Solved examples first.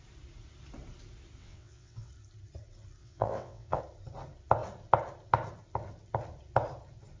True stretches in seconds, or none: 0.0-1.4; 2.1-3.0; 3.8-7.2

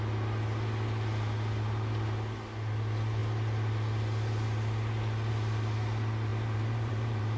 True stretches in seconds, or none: 0.0-6.3

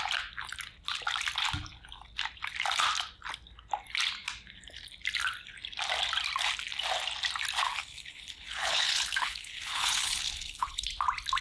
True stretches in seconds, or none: 0.0-7.8; 10.8-11.4